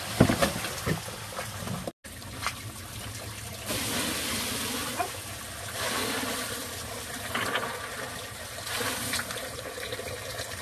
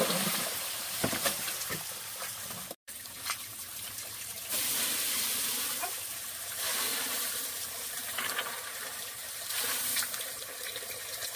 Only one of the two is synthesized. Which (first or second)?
second